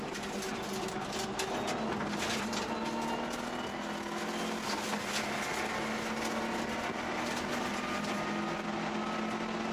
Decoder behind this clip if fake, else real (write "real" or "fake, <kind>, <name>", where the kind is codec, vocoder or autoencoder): real